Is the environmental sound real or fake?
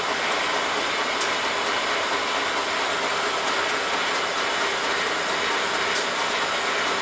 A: real